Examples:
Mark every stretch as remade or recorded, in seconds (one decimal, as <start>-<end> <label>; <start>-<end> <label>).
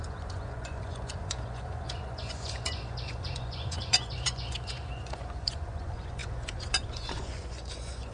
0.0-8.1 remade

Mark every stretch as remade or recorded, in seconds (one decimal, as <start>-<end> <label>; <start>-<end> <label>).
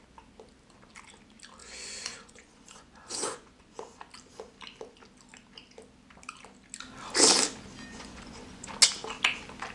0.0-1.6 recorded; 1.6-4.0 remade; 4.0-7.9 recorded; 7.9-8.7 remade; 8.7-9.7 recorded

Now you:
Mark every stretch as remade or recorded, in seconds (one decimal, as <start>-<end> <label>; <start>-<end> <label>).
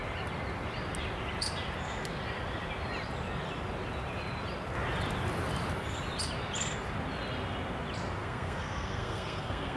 0.0-8.2 recorded; 8.2-9.8 remade